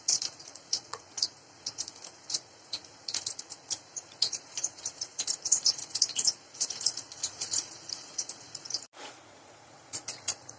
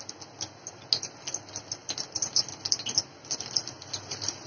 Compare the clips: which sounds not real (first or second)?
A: first